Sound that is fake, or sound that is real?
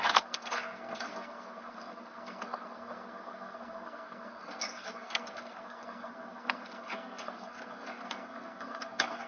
fake